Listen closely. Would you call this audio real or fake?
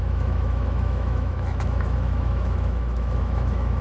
fake